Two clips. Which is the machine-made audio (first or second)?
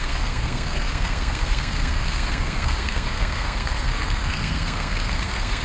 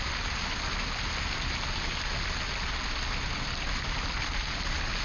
first